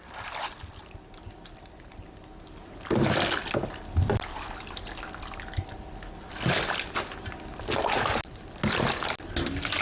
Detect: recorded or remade recorded